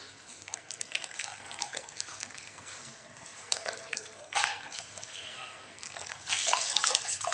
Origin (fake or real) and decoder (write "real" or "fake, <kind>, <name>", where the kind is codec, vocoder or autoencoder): fake, codec, SNAC